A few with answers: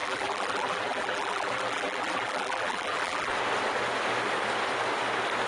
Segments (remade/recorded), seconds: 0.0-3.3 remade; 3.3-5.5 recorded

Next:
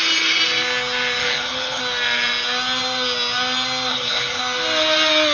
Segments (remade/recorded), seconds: 0.0-1.2 recorded; 1.2-1.8 remade; 1.8-3.9 recorded; 3.9-4.4 remade; 4.4-5.3 recorded

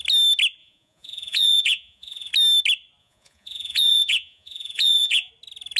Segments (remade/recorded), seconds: 0.0-0.6 recorded; 0.6-2.3 remade; 2.3-3.0 recorded; 3.0-5.3 remade; 5.3-5.8 recorded

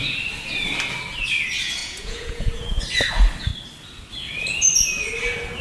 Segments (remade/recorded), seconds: 0.0-1.8 recorded; 1.8-2.8 remade; 2.8-5.6 recorded

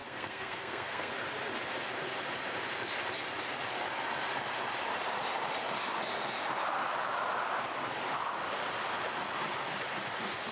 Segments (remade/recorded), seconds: 0.0-1.1 remade; 1.1-10.5 recorded

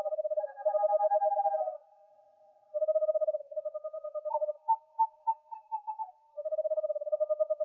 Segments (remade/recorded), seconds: 0.0-2.1 remade; 2.1-2.8 recorded; 2.8-7.6 remade

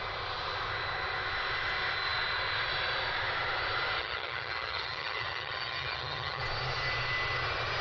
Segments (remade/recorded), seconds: 0.0-4.0 recorded; 4.0-6.4 remade; 6.4-7.8 recorded